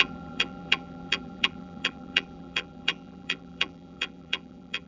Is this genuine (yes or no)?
no